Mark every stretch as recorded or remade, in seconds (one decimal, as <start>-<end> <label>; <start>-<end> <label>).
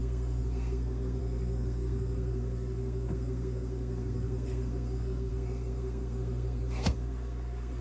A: 0.0-7.8 remade